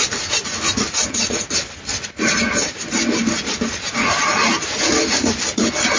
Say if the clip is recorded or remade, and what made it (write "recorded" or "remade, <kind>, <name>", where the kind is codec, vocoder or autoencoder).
recorded